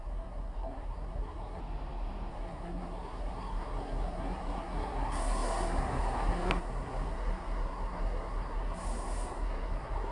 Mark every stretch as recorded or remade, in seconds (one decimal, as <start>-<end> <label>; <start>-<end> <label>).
0.0-1.6 remade; 1.6-2.3 recorded; 2.3-10.1 remade